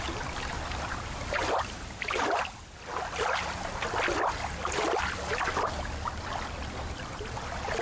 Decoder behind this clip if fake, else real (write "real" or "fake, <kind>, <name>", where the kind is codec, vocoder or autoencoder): real